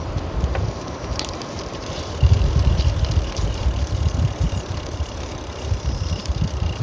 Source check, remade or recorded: remade